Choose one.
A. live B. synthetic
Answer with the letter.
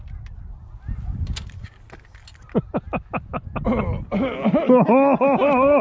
A